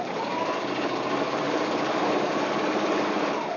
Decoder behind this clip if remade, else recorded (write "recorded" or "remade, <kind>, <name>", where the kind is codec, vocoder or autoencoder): remade, codec, DAC